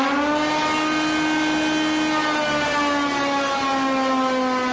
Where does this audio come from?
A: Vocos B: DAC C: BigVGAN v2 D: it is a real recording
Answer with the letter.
D